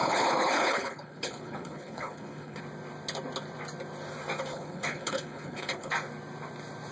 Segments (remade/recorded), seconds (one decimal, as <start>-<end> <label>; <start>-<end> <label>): 0.0-2.6 remade; 2.6-4.5 recorded; 4.5-5.9 remade; 5.9-6.9 recorded